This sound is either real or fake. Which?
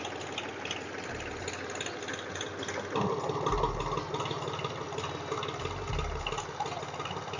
real